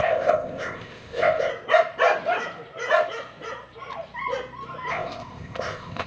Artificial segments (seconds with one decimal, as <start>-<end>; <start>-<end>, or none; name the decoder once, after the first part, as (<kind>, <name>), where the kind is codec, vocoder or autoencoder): 0.0-1.5 (codec, ZipCodec); 4.9-6.1